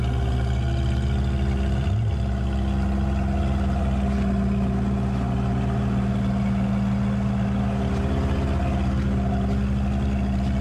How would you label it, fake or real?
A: real